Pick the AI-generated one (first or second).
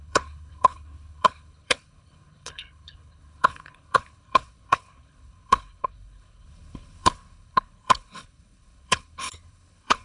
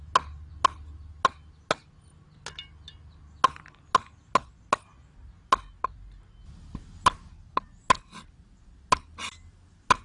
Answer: first